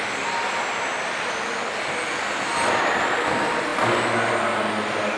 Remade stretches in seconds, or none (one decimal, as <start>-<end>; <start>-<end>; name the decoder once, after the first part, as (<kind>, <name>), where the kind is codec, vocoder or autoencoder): none